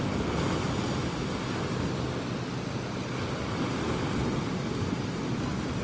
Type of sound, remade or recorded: recorded